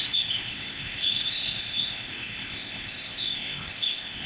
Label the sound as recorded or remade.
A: remade